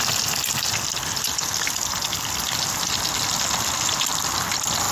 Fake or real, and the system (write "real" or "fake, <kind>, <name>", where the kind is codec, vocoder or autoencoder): real